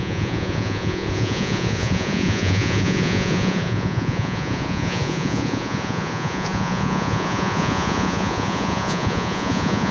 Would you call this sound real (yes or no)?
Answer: no